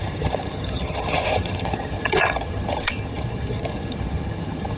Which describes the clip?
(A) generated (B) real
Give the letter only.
A